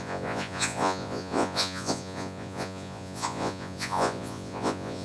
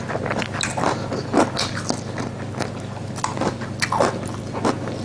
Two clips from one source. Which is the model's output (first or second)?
first